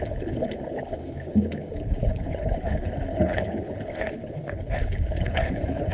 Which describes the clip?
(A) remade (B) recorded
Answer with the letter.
A